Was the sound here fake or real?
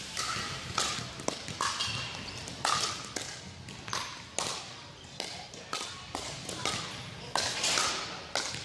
real